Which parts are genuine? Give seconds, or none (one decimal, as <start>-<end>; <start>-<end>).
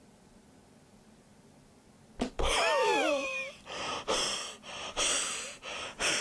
0.0-6.2